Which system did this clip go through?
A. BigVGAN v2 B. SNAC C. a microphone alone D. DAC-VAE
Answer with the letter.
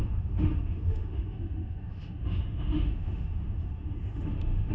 D